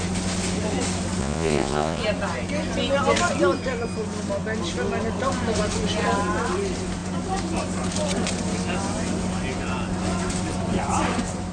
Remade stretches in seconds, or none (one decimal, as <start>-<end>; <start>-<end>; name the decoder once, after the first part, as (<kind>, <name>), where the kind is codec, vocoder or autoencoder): 1.2-2.0 (vocoder, Vocos)